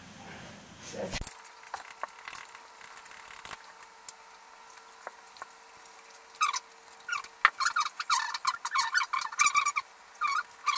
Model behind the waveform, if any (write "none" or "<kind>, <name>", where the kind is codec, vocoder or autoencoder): none